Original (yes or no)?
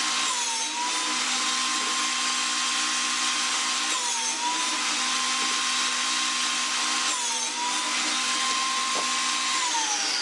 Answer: yes